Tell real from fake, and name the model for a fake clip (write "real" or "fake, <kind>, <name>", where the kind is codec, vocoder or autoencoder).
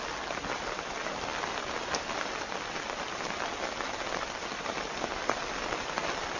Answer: real